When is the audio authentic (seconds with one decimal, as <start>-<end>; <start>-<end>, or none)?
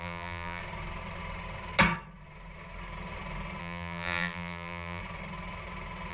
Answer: 0.6-3.6; 5.0-6.1